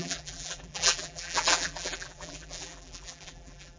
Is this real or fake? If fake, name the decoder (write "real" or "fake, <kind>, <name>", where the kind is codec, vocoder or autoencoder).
fake, vocoder, BigVGAN v2